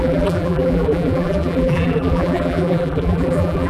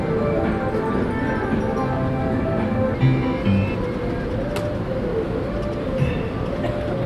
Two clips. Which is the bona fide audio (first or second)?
second